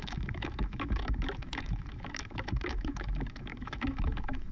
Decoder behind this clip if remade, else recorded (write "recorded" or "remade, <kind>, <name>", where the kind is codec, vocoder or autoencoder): remade, autoencoder, DAC-VAE